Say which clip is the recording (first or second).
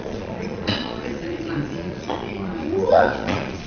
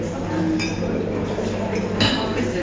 second